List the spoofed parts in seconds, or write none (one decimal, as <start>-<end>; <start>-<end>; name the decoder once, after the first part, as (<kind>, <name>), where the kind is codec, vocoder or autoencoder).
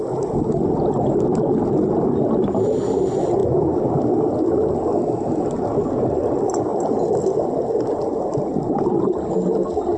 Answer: none